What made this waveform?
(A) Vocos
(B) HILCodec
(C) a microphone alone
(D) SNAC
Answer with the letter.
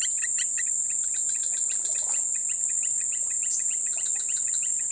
C